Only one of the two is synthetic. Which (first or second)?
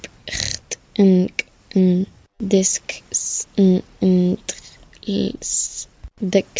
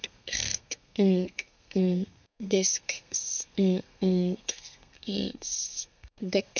second